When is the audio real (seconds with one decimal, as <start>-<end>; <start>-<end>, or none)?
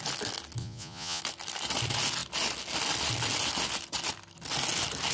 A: 0.0-0.6; 1.2-5.1